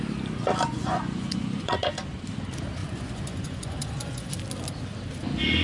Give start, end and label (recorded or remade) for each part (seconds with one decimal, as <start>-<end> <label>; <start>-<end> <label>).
0.0-0.7 recorded; 0.7-1.9 remade; 1.9-2.8 recorded; 2.8-4.3 remade; 4.3-5.6 recorded